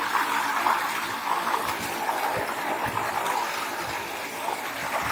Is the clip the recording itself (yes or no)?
yes